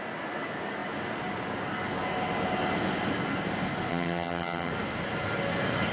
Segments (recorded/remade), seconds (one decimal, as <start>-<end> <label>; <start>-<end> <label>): 0.0-3.9 recorded; 3.9-4.7 remade; 4.7-5.9 recorded